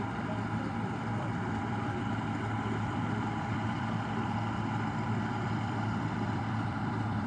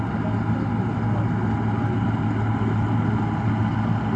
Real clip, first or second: second